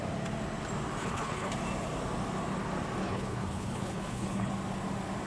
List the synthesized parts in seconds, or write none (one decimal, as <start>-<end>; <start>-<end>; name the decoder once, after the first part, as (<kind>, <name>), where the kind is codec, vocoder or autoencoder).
1.0-1.5 (codec, HILCodec); 3.0-4.5

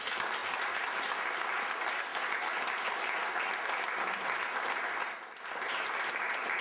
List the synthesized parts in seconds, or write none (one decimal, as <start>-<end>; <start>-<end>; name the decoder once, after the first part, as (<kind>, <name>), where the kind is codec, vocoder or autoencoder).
none

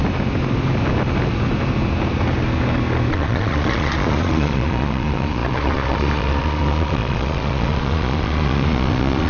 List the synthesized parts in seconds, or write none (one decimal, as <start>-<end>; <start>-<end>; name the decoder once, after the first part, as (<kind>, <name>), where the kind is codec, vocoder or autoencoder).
3.1-9.3 (vocoder, Vocos)

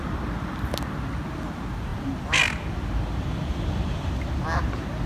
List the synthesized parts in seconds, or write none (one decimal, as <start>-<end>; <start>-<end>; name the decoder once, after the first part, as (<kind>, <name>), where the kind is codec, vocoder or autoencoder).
none

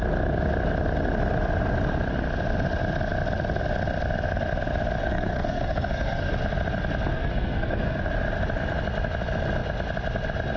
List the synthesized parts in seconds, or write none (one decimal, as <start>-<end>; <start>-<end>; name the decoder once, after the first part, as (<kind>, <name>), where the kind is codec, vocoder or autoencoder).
5.0-6.3 (codec, SNAC); 7.1-8.0